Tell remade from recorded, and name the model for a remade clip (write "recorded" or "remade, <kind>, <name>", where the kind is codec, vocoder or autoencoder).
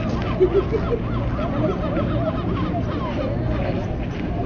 recorded